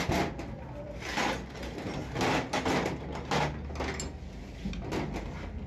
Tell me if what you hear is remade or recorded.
recorded